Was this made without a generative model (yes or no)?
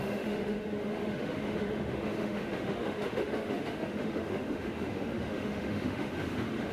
no